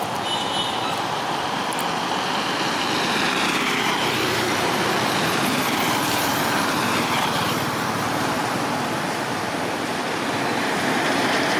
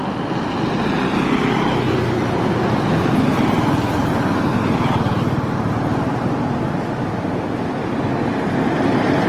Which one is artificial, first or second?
first